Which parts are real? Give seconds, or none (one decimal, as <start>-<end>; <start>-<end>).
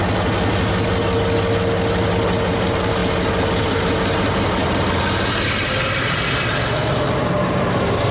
0.0-2.5; 3.0-3.7